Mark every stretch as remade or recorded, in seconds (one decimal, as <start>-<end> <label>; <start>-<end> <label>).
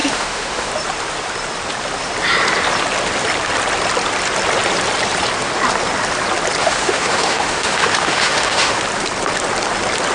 0.0-0.7 remade; 0.7-6.6 recorded; 6.6-8.8 remade; 8.8-10.1 recorded